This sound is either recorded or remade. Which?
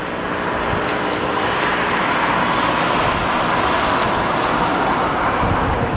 recorded